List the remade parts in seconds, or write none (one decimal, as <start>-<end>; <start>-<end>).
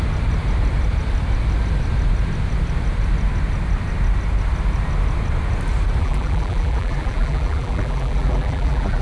6.0-9.0